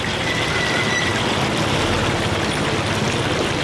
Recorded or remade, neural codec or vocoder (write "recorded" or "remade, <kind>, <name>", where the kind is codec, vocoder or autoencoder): recorded